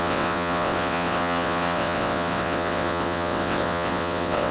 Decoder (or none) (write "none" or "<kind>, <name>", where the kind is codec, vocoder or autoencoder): vocoder, WaveNeXt